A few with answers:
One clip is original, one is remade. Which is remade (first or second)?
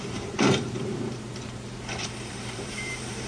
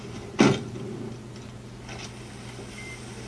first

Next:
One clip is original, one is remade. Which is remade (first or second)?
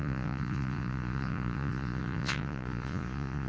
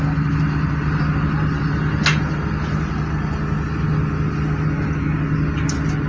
first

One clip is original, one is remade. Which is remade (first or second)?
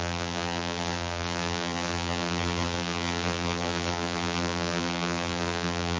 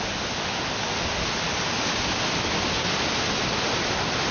first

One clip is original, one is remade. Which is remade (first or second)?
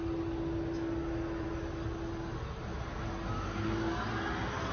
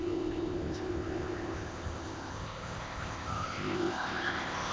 second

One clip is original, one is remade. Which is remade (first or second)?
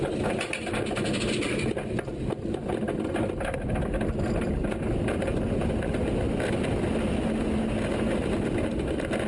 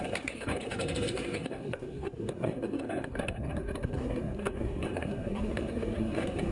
second